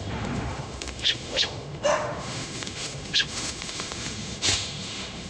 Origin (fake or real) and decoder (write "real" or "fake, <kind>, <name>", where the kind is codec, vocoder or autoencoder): fake, autoencoder, DAC-VAE